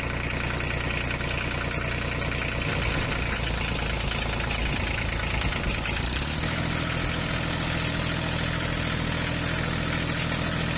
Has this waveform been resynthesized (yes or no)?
no